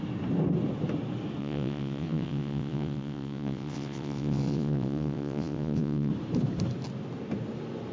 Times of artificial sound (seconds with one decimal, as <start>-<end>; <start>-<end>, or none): 1.4-6.1